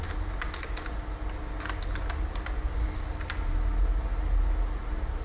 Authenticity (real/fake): real